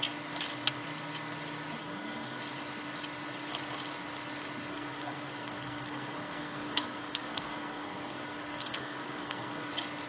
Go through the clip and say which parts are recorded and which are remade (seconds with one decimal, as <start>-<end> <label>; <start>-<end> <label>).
0.0-1.8 recorded; 1.8-2.4 remade; 2.4-4.7 recorded; 4.7-9.7 remade; 9.7-10.1 recorded

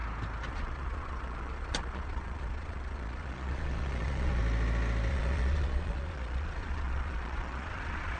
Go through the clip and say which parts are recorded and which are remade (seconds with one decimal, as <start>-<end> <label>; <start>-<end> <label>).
0.0-0.5 recorded; 0.5-4.4 remade; 4.4-5.1 recorded; 5.1-8.2 remade

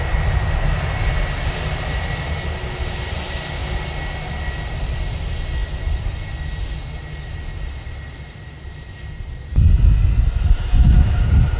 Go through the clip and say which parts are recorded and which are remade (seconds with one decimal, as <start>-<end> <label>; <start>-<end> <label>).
0.0-11.6 recorded

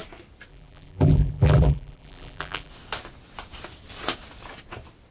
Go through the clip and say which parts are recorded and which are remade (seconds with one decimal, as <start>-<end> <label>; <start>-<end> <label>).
0.0-0.5 recorded; 0.5-2.7 remade; 2.7-5.1 recorded